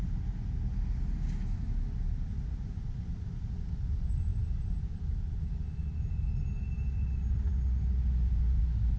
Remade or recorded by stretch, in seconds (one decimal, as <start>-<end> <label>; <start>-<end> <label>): 0.0-9.0 recorded